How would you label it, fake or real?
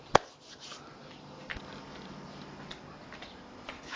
real